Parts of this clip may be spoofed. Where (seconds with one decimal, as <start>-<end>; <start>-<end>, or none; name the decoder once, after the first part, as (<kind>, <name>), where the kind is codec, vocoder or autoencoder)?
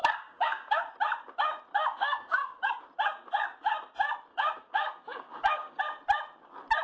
0.0-0.8 (codec, DAC); 1.7-2.7; 4.3-5.8